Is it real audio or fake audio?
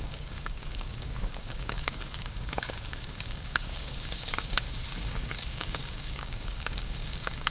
fake